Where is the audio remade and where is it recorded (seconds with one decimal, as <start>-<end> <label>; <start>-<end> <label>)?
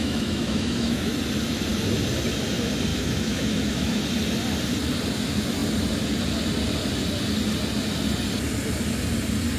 0.0-1.2 remade; 1.2-2.9 recorded; 2.9-4.0 remade; 4.0-9.6 recorded